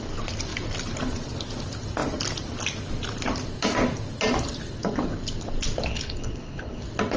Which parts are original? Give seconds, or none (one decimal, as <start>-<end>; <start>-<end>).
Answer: 0.0-5.9; 6.8-7.2